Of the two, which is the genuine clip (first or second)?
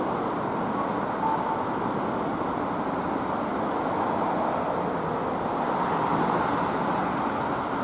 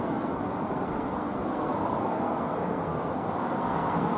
first